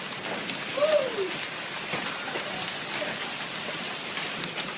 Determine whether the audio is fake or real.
real